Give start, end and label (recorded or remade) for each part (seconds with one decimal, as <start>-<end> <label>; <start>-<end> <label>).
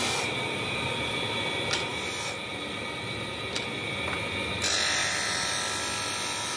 0.0-5.0 recorded; 5.0-5.6 remade; 5.6-6.6 recorded